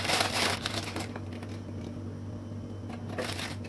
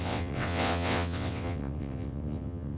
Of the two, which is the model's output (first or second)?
second